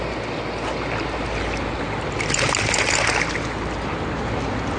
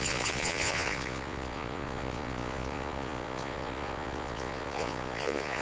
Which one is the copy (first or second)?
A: second